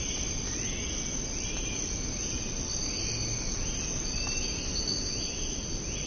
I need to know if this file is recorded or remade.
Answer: recorded